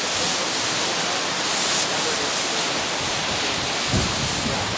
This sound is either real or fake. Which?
real